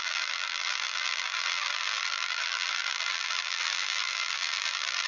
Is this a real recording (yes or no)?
no